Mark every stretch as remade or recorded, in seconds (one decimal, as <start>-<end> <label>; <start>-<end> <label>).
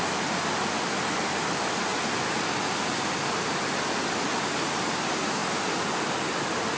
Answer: 0.0-6.8 recorded